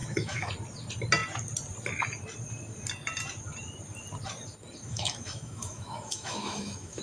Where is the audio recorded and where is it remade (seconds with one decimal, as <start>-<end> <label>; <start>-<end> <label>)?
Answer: 0.0-0.5 remade; 0.5-4.9 recorded; 4.9-7.0 remade